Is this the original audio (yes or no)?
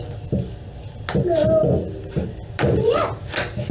yes